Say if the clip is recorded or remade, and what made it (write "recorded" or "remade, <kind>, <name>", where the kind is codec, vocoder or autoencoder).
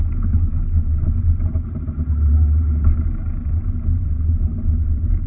remade, vocoder, BigVGAN v2